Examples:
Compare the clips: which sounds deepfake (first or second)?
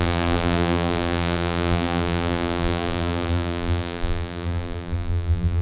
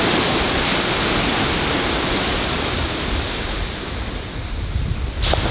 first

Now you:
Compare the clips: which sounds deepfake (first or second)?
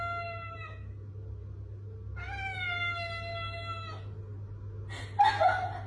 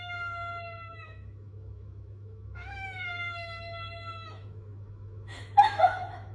second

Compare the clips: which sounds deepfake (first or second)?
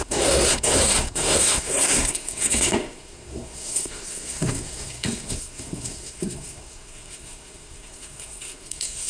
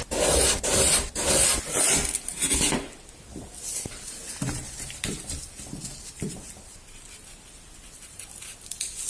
first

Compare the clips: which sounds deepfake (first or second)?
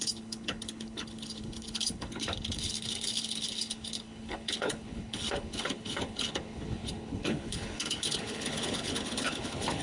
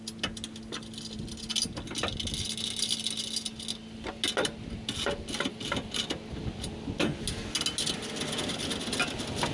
first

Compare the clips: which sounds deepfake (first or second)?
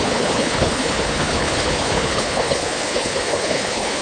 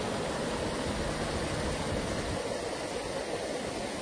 first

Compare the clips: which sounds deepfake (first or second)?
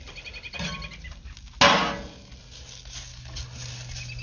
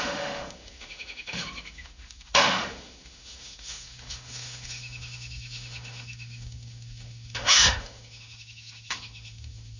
second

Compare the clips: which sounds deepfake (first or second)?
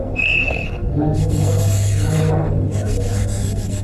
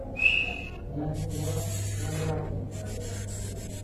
first